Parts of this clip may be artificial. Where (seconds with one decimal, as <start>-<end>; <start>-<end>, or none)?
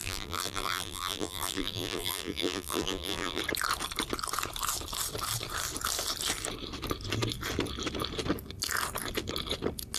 0.0-3.4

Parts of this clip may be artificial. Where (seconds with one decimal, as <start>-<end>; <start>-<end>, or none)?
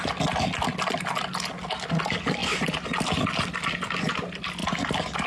none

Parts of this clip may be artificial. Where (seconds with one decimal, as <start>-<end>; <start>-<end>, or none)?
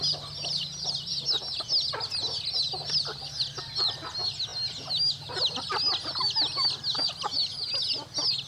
none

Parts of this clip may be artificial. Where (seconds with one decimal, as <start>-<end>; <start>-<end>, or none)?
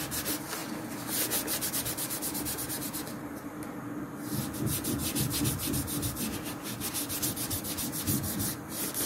none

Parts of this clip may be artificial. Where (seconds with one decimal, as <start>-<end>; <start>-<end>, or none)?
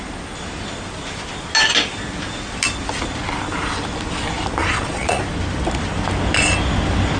4.6-5.2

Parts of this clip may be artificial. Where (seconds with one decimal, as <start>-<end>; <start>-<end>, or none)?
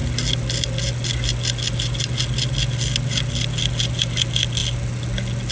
none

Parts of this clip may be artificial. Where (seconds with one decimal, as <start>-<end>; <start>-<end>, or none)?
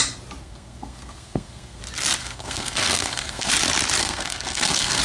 0.4-1.8; 2.2-3.5; 4.0-5.0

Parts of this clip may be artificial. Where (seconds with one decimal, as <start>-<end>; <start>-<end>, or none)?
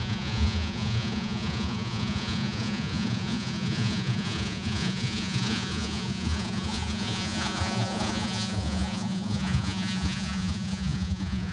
0.0-11.5